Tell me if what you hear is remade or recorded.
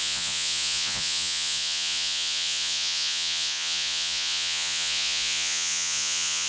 remade